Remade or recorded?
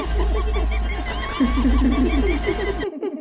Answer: recorded